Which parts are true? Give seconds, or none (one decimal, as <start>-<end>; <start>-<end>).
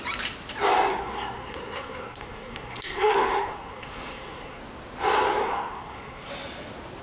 0.0-0.9; 4.6-5.4; 6.3-7.0